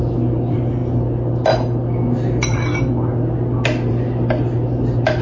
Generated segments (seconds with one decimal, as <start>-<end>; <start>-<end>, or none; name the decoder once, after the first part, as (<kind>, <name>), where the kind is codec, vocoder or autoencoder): none